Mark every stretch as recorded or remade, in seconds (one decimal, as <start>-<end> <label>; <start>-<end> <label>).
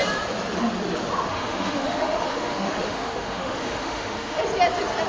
0.0-1.3 recorded; 1.3-4.4 remade; 4.4-5.1 recorded